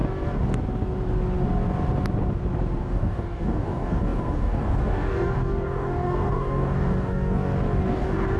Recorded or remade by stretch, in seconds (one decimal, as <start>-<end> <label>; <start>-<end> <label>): 0.0-2.8 recorded; 2.8-8.4 remade

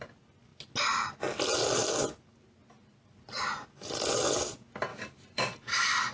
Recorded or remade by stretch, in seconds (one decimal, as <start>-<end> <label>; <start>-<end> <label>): 0.0-4.9 recorded; 4.9-6.1 remade

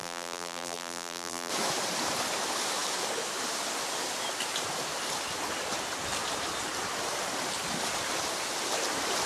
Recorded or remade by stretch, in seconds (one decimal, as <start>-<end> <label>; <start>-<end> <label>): 0.0-1.5 remade; 1.5-9.3 recorded

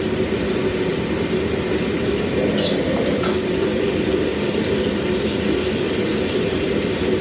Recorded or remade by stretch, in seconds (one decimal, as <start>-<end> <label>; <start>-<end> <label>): 0.0-7.2 recorded

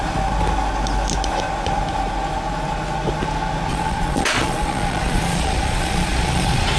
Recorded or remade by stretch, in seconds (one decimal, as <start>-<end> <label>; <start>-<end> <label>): 0.0-3.7 recorded; 3.7-6.8 remade

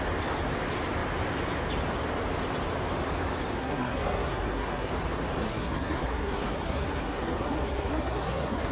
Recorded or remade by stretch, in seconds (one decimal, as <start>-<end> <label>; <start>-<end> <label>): 0.0-3.6 recorded; 3.6-4.9 remade; 4.9-5.4 recorded; 5.4-8.7 remade

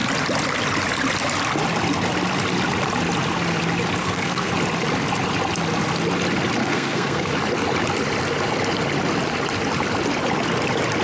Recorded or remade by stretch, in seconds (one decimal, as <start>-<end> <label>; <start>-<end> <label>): 0.0-4.0 recorded; 4.0-4.5 remade; 4.5-6.6 recorded; 6.6-7.3 remade; 7.3-11.0 recorded

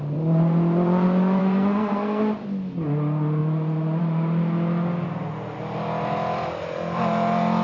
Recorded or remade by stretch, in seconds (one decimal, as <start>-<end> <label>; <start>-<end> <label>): 0.0-1.4 recorded; 1.4-2.2 remade; 2.2-7.6 recorded